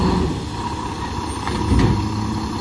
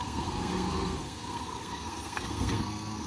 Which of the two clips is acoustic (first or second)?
first